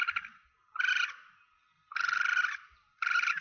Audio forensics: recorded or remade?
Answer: recorded